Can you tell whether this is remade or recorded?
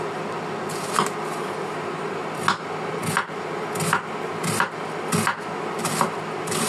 recorded